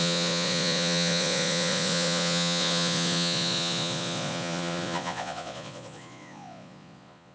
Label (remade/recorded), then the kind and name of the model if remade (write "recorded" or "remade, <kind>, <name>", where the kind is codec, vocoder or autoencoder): remade, vocoder, Vocos